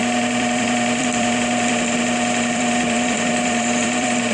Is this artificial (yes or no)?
yes